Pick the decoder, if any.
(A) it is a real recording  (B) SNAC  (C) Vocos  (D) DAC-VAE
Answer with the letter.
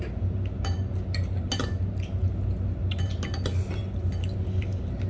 A